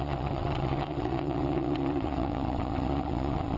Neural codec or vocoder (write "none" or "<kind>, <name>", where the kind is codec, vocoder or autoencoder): vocoder, WaveNeXt